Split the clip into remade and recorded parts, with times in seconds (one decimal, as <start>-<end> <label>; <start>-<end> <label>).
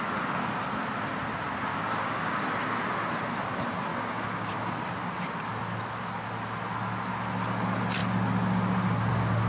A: 0.0-1.7 recorded; 1.7-2.4 remade; 2.4-3.9 recorded; 3.9-4.5 remade; 4.5-9.5 recorded